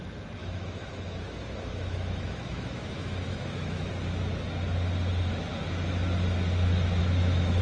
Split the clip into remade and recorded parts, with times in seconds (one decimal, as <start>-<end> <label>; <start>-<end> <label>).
0.0-0.4 recorded; 0.4-3.9 remade; 3.9-7.0 recorded; 7.0-7.6 remade